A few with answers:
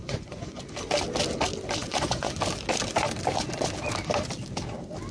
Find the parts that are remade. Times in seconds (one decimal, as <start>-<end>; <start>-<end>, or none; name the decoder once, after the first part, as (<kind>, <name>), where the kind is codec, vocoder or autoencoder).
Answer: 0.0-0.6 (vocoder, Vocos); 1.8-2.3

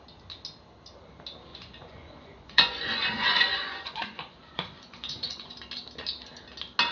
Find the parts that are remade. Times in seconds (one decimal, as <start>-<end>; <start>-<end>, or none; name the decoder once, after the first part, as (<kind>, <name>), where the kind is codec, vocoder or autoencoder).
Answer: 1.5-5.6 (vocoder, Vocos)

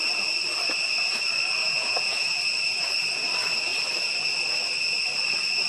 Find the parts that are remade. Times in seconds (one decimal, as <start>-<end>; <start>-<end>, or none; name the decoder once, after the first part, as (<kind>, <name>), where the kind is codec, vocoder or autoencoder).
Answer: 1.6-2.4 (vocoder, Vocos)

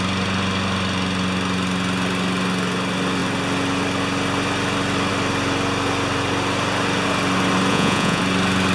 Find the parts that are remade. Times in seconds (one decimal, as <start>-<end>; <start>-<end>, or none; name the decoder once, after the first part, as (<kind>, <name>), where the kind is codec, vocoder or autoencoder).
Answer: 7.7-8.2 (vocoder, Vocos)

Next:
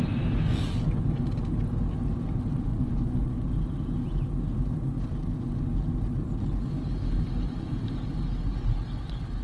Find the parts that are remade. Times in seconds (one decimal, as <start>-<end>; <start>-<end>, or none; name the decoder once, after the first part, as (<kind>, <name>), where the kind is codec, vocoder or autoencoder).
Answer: 2.7-3.5 (vocoder, Vocos)

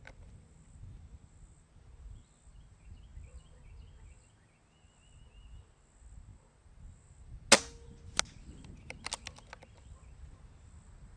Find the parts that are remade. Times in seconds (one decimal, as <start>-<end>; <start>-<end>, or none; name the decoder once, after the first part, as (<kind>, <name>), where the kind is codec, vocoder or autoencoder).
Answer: none

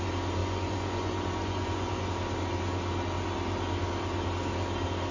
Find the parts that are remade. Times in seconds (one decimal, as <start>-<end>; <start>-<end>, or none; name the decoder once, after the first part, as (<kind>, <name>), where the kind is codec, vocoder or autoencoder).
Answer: 0.4-2.1 (vocoder, Vocos)

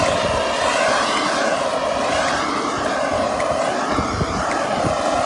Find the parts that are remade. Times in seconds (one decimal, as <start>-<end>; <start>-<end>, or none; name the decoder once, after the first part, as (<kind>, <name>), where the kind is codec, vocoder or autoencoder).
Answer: none